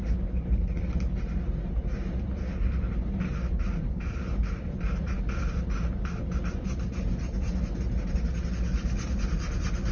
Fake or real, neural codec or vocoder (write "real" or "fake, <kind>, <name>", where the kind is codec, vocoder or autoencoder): real